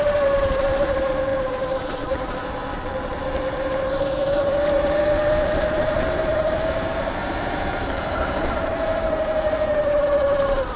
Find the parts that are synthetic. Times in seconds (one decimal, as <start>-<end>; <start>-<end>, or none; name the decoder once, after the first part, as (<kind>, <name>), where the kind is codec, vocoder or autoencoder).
0.0-7.2 (vocoder, BigVGAN v2); 8.5-10.8